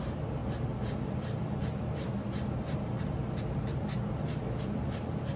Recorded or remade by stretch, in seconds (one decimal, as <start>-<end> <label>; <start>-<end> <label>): 0.0-5.4 remade